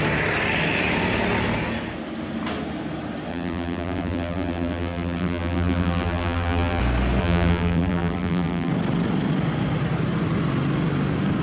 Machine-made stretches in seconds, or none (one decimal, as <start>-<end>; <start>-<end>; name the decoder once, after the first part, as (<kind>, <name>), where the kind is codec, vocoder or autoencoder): 3.3-6.8 (vocoder, BigVGAN v2); 7.2-8.7